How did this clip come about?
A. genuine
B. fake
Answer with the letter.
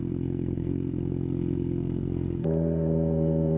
B